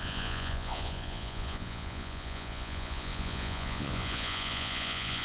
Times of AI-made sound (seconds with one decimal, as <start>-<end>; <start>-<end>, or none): 0.0-5.2

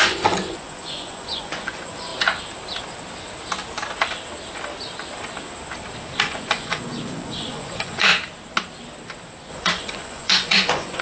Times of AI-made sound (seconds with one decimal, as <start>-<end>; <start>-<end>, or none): 0.0-2.1; 6.2-8.1; 9.5-11.0